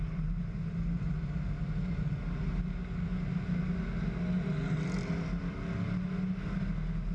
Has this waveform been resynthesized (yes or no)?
no